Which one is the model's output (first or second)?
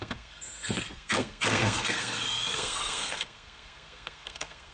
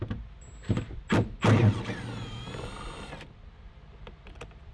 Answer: first